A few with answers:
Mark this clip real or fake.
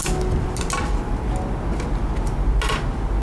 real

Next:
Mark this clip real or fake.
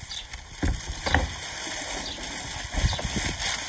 real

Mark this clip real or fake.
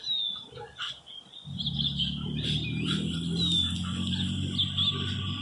real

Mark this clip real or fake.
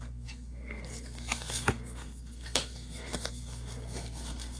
fake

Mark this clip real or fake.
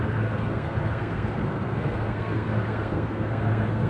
fake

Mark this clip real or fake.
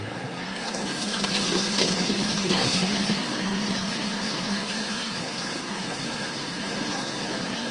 fake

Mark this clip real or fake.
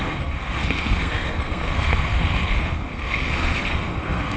fake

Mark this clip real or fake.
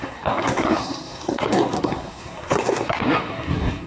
fake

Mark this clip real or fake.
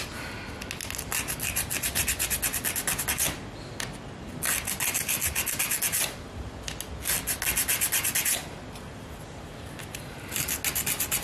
real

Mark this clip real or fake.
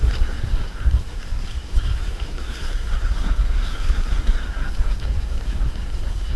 fake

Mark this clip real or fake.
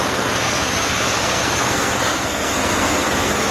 fake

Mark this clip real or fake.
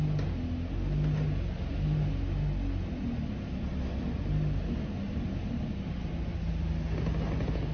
real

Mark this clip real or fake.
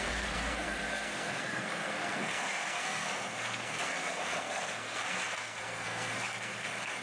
fake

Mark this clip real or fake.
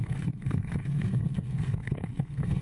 fake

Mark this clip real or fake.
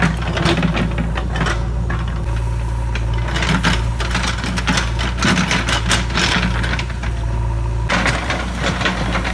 real